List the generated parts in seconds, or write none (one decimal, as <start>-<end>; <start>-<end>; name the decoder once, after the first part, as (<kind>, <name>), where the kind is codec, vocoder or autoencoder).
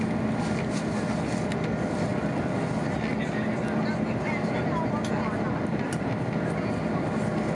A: none